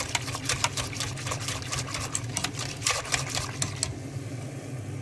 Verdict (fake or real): real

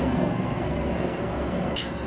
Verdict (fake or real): fake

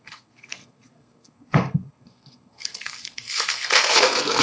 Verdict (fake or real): fake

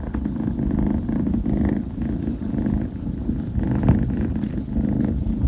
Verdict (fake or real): real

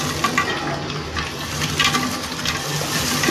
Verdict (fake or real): real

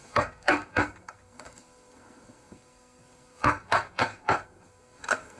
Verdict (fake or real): fake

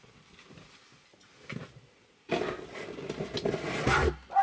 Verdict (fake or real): real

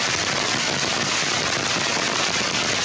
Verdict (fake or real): real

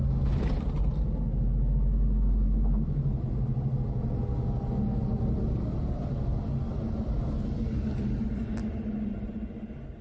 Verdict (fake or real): real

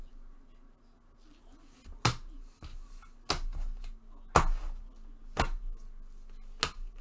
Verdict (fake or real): real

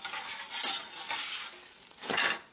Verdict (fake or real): real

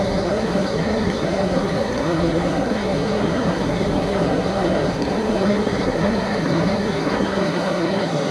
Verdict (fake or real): fake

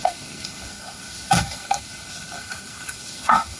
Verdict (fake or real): fake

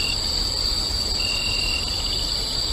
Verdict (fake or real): real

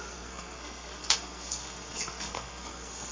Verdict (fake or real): fake